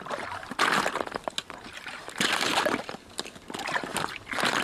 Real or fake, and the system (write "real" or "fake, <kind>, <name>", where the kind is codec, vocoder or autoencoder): real